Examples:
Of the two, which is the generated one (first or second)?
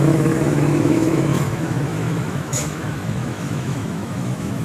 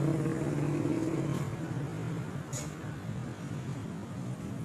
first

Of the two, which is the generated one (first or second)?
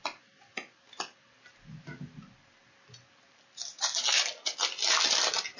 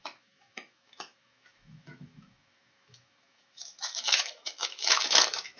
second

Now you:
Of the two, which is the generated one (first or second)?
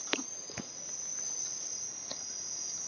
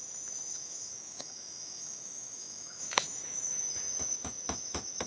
second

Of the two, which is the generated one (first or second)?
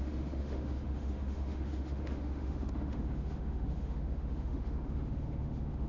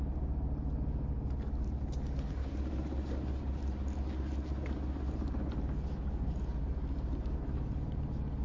first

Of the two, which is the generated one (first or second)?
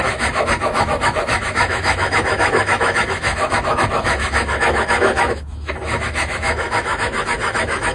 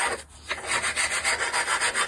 first